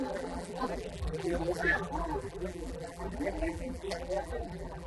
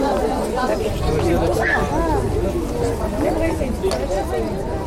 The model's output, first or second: first